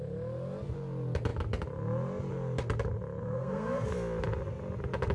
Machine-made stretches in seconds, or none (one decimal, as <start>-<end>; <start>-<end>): 3.2-3.9